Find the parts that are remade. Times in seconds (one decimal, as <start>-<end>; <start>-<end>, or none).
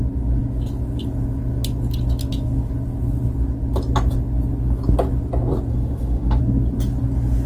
5.7-6.4